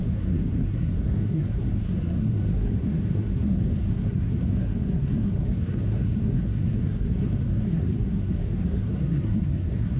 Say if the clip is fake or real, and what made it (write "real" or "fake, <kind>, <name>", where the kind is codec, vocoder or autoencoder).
fake, codec, SNAC